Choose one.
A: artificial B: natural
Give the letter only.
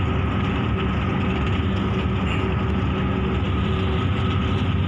B